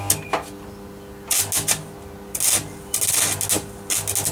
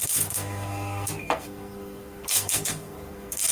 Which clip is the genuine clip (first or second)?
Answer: first